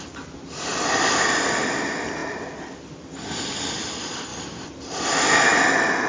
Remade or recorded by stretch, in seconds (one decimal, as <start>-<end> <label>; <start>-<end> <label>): 0.0-6.1 recorded